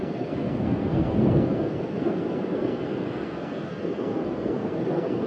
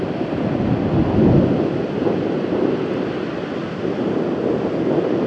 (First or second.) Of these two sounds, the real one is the second